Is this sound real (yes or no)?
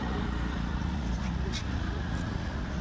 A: no